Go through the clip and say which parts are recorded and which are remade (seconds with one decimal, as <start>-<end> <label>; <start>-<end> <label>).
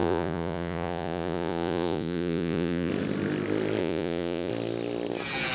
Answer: 0.0-2.9 remade; 2.9-3.8 recorded; 3.8-4.5 remade; 4.5-5.5 recorded